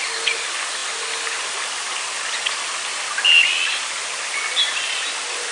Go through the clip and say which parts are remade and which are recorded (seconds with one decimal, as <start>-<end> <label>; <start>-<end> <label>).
0.0-5.5 recorded